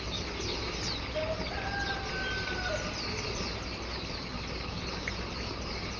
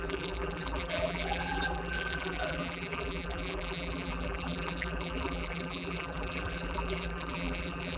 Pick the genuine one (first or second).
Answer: first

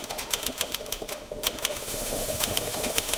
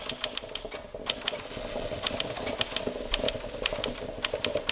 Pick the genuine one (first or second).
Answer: second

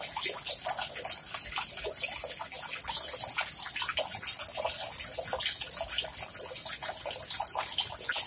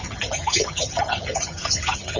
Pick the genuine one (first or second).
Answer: first